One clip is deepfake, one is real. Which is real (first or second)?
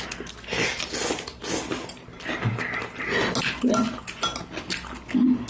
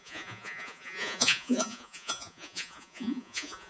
first